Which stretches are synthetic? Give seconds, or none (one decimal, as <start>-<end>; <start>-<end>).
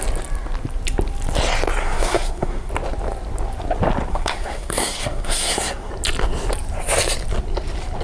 1.8-2.7; 4.1-5.9